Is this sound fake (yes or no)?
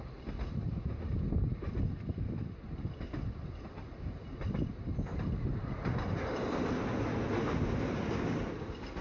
no